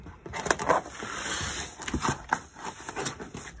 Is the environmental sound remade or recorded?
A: recorded